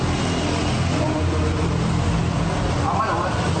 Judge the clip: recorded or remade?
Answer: recorded